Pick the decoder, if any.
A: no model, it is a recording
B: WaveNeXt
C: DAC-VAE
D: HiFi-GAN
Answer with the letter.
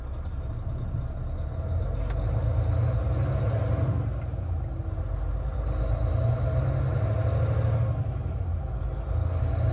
A